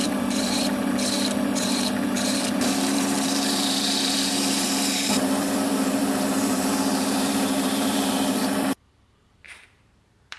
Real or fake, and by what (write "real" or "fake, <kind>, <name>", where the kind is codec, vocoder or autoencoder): fake, vocoder, BigVGAN v2